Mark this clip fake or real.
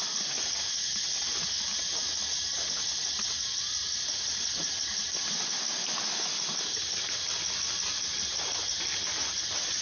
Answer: real